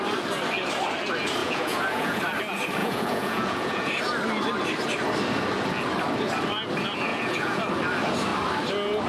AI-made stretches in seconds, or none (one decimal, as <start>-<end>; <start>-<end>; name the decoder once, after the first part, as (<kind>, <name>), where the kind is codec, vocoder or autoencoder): 1.4-2.2 (vocoder, Vocos); 2.8-3.9; 7.1-7.6